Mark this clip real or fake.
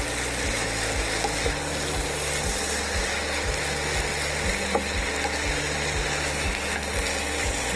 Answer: real